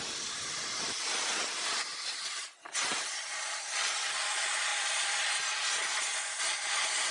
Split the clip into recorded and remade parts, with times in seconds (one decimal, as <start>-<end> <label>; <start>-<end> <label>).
0.0-7.1 recorded